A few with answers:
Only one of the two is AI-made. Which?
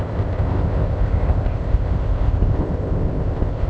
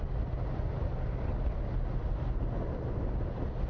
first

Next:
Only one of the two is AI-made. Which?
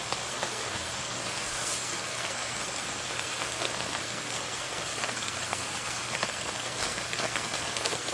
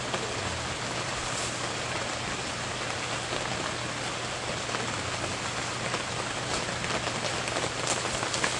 first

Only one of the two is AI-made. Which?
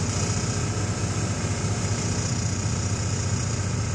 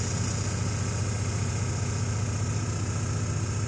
first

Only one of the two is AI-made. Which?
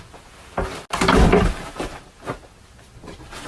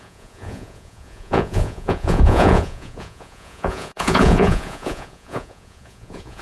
second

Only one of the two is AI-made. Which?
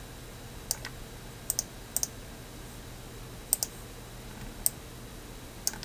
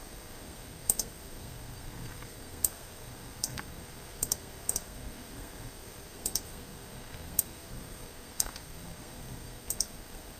second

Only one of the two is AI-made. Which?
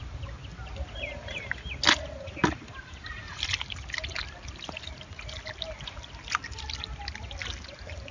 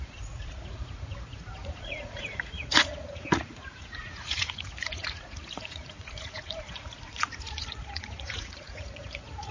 second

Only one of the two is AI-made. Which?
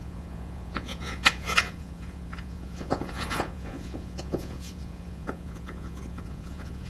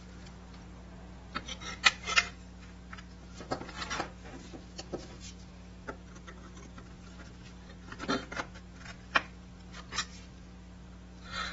first